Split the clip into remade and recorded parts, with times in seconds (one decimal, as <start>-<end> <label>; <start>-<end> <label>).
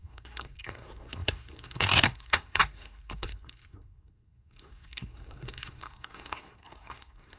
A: 0.0-7.4 remade